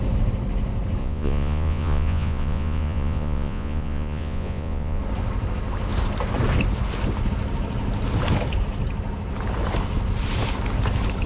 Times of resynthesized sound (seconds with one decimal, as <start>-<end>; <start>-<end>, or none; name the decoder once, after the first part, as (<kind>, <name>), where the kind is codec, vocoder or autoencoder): 1.0-5.0 (vocoder, Vocos)